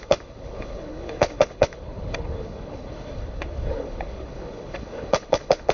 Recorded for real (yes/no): no